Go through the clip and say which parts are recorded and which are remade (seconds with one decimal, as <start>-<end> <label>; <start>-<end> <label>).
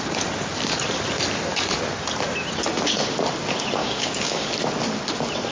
0.0-3.8 recorded; 3.8-4.5 remade; 4.5-5.5 recorded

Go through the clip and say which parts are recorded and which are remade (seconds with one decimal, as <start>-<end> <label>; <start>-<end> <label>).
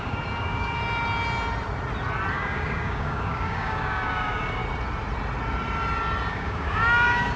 0.0-0.8 remade; 0.8-2.3 recorded; 2.3-4.6 remade; 4.6-6.3 recorded; 6.3-7.4 remade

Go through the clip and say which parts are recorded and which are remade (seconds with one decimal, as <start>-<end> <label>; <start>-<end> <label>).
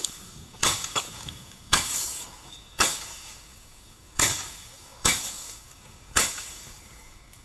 0.0-7.4 remade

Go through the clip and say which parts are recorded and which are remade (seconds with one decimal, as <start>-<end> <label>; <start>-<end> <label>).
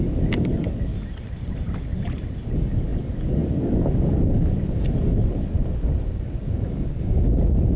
0.0-0.9 remade; 0.9-2.5 recorded; 2.5-7.8 remade